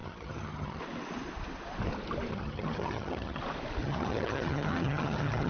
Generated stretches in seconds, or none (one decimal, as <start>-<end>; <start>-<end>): 0.0-0.8; 2.3-3.4; 3.8-5.5